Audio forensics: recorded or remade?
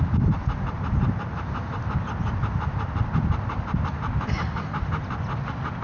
recorded